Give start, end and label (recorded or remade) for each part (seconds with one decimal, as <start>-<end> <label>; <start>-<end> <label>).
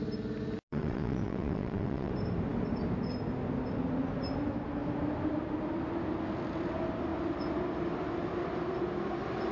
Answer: 0.0-0.7 recorded; 0.7-2.1 remade; 2.1-9.5 recorded